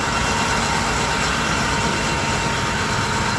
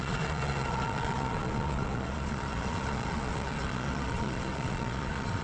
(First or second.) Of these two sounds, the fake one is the second